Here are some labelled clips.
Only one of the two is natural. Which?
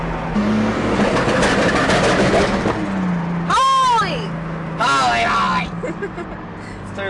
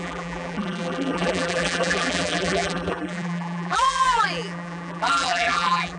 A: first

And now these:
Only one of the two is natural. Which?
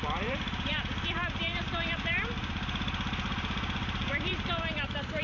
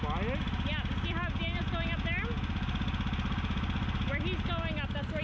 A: second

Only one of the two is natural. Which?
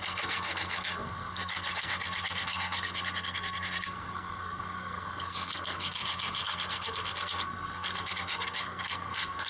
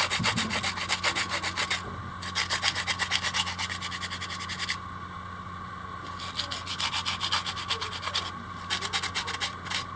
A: second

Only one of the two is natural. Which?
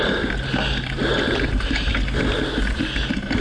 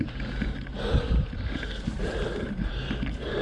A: first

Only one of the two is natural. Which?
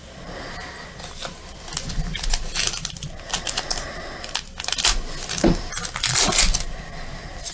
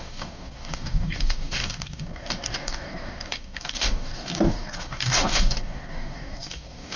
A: first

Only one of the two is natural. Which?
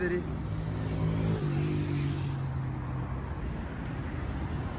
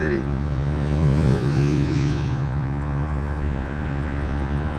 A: first